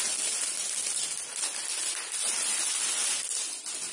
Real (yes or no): yes